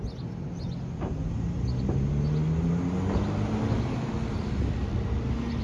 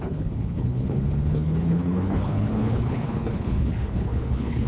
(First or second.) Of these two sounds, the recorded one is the first